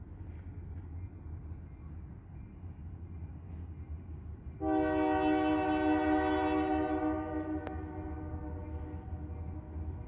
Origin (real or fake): real